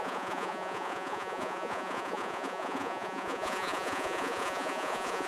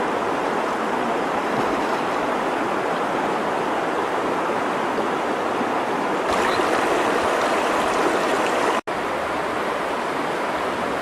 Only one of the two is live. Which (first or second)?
second